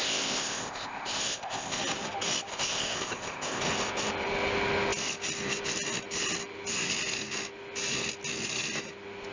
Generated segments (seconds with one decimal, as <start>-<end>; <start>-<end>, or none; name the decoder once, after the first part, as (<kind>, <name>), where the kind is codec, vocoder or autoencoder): 0.0-1.8 (codec, ZipCodec); 2.5-3.6